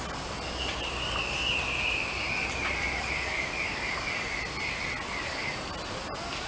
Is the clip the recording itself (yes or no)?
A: yes